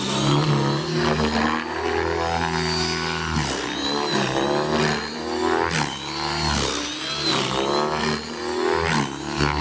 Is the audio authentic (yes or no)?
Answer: yes